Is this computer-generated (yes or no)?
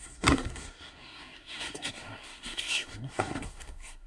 yes